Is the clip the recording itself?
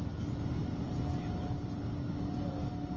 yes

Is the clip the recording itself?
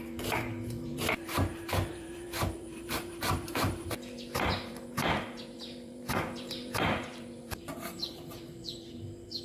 no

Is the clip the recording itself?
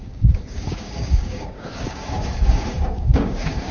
no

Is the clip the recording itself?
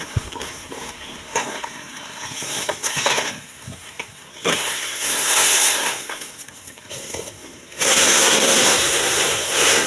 no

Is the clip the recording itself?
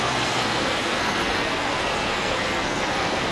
no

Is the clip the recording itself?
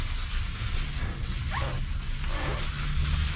yes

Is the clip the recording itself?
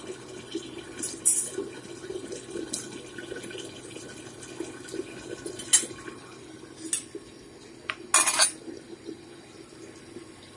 yes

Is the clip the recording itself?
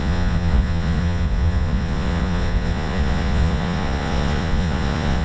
no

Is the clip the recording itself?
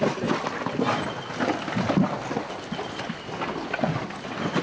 yes